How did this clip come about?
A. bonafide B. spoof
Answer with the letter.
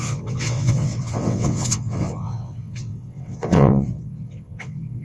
B